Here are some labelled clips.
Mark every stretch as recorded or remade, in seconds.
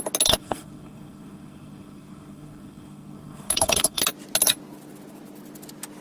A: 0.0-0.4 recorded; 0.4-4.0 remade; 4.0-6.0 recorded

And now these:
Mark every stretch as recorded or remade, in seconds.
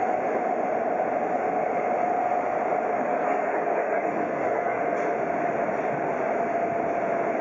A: 0.0-3.0 recorded; 3.0-4.8 remade; 4.8-7.4 recorded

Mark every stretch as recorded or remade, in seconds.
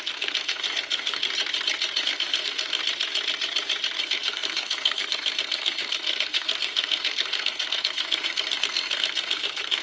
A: 0.0-1.2 remade; 1.2-2.0 recorded; 2.0-2.8 remade; 2.8-4.0 recorded; 4.0-9.8 remade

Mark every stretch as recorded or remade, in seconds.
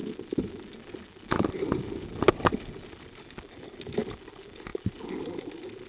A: 0.0-5.9 recorded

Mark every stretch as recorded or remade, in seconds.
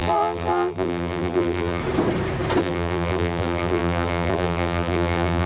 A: 0.0-1.8 remade; 1.8-2.6 recorded; 2.6-5.5 remade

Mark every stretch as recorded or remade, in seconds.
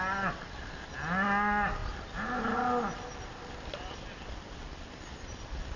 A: 0.0-5.8 recorded